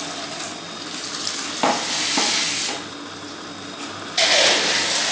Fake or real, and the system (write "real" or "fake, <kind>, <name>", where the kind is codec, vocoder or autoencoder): real